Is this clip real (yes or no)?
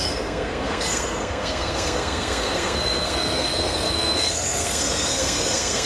no